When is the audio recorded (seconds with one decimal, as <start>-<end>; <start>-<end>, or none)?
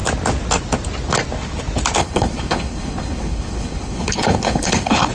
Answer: 0.0-2.0